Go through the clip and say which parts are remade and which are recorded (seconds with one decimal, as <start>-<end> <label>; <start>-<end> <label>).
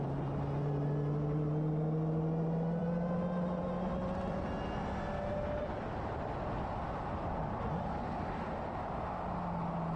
0.0-10.0 recorded